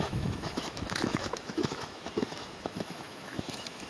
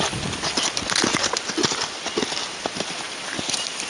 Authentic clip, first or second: second